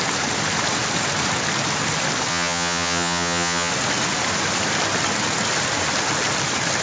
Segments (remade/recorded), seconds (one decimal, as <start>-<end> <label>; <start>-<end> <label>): 0.0-2.3 recorded; 2.3-3.7 remade; 3.7-6.8 recorded